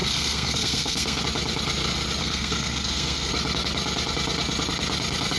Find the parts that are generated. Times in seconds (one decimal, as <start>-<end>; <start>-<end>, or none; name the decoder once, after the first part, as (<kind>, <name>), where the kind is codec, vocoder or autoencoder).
0.0-1.2 (codec, SNAC); 2.2-3.3